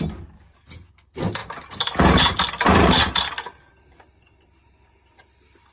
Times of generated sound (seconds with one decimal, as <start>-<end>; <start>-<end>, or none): none